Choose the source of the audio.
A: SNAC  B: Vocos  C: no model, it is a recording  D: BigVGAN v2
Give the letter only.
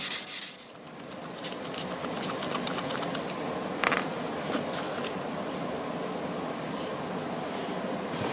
C